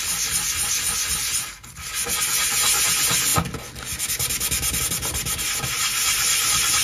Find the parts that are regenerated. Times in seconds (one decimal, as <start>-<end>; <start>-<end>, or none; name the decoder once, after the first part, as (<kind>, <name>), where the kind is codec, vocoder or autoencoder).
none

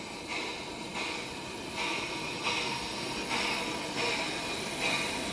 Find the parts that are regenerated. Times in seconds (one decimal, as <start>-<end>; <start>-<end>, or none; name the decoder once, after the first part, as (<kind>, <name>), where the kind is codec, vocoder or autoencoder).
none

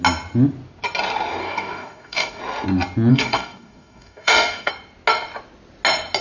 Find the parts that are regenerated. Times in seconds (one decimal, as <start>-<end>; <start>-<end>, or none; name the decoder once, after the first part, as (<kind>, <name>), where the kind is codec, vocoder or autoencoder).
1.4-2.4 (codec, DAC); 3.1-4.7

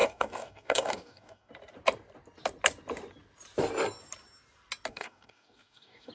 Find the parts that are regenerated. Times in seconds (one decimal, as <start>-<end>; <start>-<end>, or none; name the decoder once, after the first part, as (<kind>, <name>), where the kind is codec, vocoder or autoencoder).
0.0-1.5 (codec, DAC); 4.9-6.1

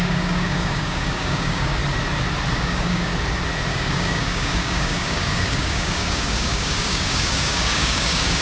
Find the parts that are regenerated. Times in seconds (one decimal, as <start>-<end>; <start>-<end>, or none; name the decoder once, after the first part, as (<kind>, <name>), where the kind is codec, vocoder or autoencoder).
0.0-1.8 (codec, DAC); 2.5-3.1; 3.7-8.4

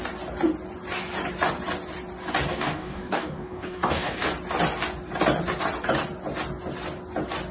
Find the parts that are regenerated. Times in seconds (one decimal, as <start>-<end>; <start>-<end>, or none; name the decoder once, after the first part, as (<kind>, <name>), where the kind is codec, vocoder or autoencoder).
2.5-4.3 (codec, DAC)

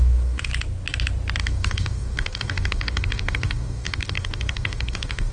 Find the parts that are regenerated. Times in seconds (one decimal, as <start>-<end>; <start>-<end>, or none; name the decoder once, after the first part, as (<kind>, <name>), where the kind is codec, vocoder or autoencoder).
0.0-0.5 (codec, DAC); 1.4-5.3